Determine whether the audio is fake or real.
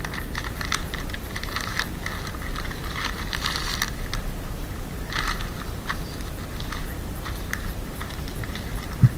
real